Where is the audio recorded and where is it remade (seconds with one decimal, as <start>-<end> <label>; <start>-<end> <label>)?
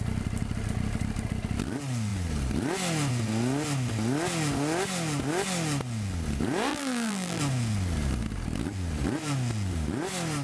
0.0-6.7 recorded; 6.7-7.4 remade; 7.4-10.4 recorded